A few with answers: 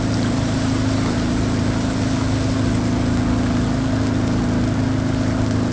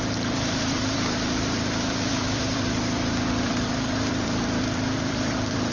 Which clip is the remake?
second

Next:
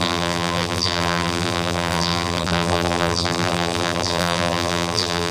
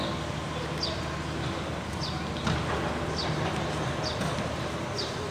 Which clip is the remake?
first